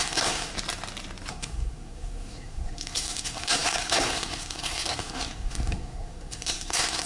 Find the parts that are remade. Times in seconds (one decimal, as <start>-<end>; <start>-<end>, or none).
0.0-0.5; 1.3-7.1